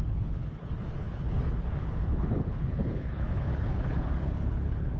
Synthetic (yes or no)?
yes